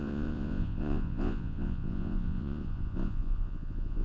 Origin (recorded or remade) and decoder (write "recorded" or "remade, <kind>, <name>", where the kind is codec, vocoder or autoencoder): remade, vocoder, Vocos